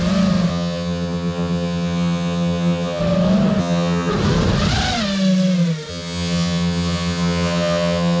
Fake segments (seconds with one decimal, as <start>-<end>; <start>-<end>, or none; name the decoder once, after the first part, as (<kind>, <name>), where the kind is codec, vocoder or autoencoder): 0.5-3.0 (vocoder, HiFi-GAN); 3.6-4.1; 5.9-8.2